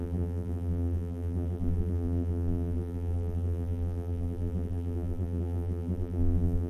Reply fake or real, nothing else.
fake